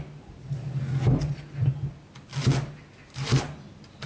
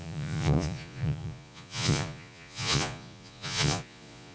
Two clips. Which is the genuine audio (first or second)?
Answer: first